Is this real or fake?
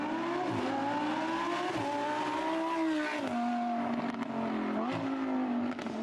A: real